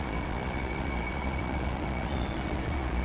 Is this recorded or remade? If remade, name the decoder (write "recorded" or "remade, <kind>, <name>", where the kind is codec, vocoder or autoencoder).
remade, vocoder, Vocos